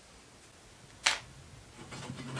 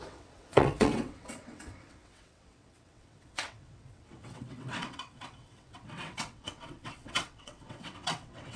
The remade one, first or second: second